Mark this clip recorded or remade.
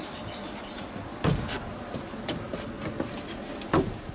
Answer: recorded